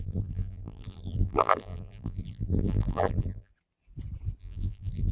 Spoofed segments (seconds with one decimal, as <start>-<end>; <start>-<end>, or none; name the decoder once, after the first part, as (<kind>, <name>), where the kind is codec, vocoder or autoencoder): 0.0-3.5 (vocoder, BigVGAN v2); 4.4-5.1